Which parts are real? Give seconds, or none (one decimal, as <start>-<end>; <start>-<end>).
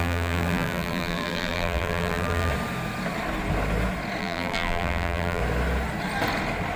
2.5-4.2; 5.4-6.8